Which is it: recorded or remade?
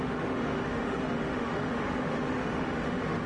remade